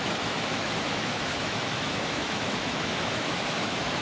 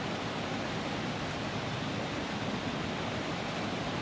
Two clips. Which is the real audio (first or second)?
second